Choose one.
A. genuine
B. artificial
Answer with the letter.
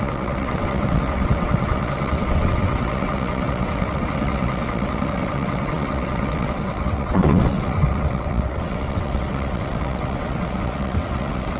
B